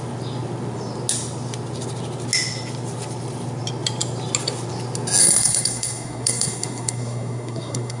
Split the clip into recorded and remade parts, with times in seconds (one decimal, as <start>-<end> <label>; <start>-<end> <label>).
0.0-5.2 recorded; 5.2-8.0 remade